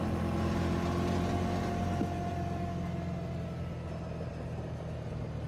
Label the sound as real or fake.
real